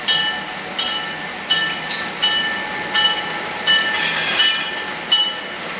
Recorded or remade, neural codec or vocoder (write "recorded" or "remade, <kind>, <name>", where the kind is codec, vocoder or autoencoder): recorded